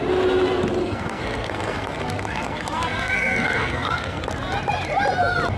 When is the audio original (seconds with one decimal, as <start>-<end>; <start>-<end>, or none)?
0.0-0.8; 4.2-5.6

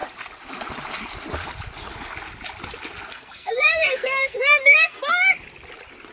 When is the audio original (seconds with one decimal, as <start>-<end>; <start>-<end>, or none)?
0.0-3.1; 5.1-6.1

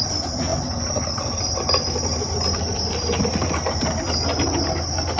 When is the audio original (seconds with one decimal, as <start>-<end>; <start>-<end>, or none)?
0.0-5.2

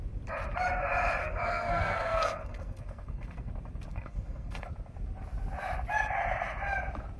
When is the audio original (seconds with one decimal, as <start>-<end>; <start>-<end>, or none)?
0.0-1.2; 3.5-3.9; 4.7-7.2